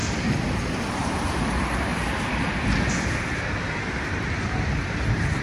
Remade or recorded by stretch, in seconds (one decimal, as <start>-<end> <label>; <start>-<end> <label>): 0.0-0.9 recorded; 0.9-1.9 remade; 1.9-3.6 recorded; 3.6-5.4 remade